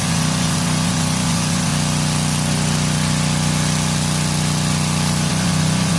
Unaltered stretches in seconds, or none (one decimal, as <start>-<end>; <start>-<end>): 1.7-5.3